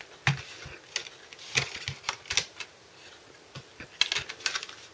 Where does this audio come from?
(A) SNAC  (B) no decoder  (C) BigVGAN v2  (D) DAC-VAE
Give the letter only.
B